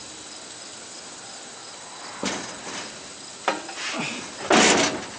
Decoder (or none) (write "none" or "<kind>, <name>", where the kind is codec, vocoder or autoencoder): none